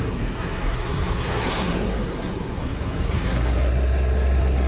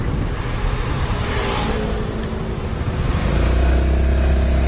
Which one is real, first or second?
second